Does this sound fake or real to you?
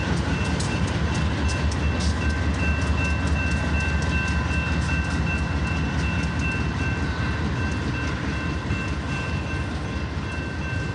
real